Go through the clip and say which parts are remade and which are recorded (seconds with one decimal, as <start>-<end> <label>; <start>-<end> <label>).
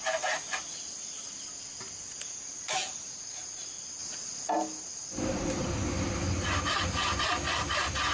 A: 0.0-8.1 recorded